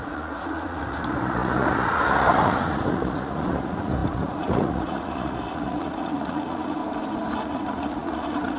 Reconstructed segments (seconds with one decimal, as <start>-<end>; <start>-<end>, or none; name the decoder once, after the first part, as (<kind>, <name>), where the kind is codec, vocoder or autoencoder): 0.0-6.8 (vocoder, Vocos); 7.4-8.6